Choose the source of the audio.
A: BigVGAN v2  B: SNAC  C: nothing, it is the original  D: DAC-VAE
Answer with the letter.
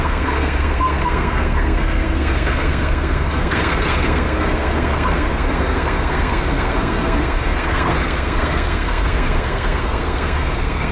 B